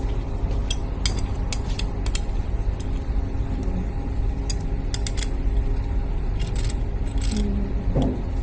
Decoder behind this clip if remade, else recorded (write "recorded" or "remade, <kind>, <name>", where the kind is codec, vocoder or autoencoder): recorded